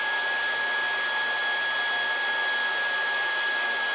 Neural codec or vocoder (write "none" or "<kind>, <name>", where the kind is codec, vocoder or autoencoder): none